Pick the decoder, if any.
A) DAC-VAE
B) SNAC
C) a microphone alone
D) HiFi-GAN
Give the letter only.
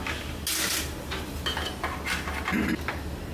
C